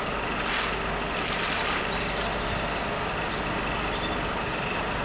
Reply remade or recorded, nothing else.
recorded